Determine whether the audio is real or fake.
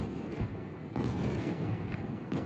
fake